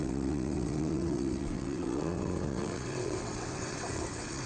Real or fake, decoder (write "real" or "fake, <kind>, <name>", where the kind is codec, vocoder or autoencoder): fake, vocoder, WaveNeXt